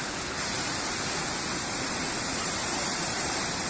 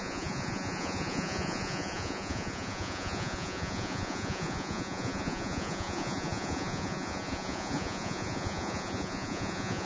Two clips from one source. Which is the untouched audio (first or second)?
first